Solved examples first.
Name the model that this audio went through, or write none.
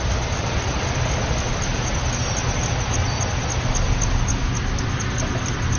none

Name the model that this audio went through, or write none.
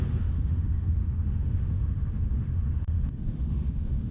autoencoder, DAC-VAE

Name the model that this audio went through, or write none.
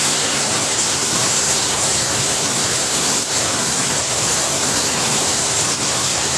codec, SNAC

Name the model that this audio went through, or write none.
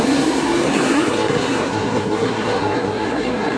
codec, SNAC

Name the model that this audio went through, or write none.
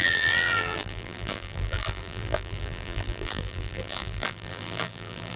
vocoder, BigVGAN v2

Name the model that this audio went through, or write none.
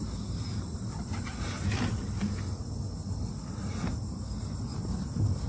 none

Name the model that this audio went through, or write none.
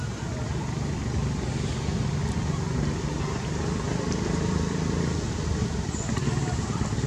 none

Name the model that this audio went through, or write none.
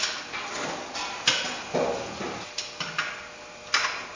none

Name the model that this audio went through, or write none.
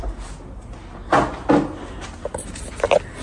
none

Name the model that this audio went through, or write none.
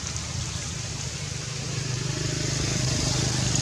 none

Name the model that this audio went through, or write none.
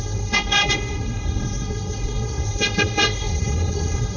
codec, SNAC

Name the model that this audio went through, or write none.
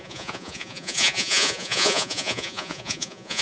vocoder, Vocos